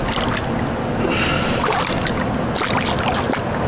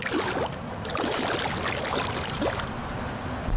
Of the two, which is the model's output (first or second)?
second